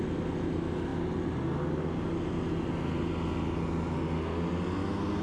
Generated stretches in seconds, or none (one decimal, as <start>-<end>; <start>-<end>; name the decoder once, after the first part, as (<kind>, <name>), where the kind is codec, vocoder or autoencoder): none